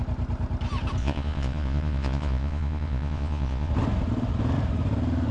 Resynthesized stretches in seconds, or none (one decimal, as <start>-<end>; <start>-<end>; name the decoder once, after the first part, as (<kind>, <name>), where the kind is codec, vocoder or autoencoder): 1.0-3.7 (vocoder, Vocos)